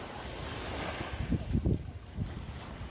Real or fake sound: real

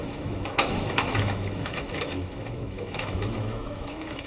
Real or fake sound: fake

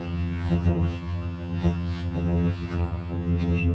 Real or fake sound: fake